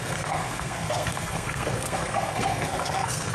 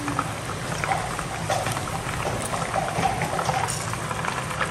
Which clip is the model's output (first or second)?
first